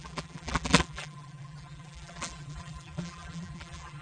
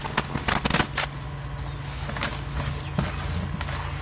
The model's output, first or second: first